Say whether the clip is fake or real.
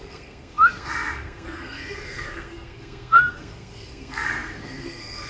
fake